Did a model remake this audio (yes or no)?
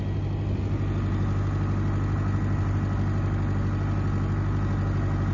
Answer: no